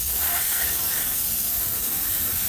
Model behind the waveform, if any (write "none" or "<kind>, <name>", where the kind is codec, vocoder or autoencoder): codec, SNAC